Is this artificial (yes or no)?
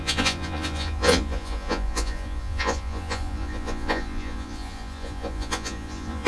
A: yes